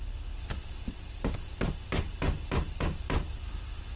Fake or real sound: real